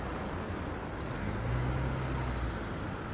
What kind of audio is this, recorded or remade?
recorded